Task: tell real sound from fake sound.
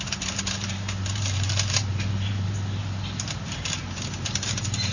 fake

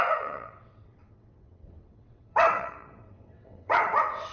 fake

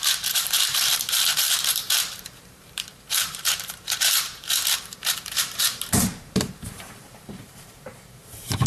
fake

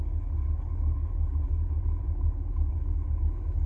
fake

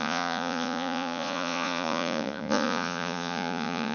fake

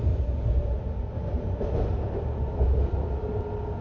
real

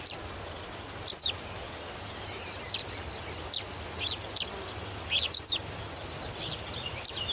real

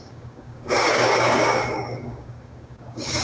fake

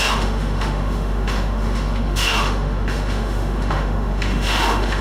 fake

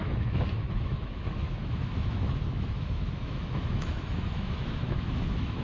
fake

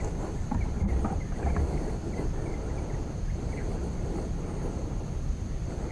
real